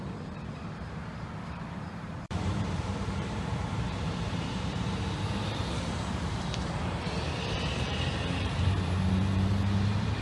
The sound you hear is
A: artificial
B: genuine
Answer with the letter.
A